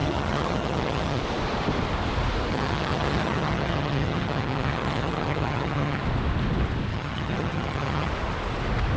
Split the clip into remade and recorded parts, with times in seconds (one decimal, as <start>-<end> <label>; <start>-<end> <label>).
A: 0.0-1.2 remade; 1.2-2.5 recorded; 2.5-6.0 remade; 6.0-6.9 recorded; 6.9-8.1 remade; 8.1-9.0 recorded